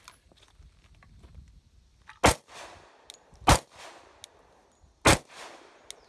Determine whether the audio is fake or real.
real